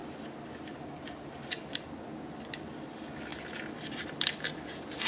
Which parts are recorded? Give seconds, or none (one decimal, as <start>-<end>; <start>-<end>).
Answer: 0.0-5.1